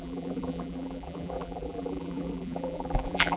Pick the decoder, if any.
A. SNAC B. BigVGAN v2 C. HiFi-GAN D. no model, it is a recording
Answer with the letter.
B